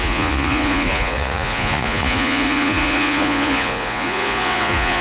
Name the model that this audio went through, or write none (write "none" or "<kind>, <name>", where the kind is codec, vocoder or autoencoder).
vocoder, Vocos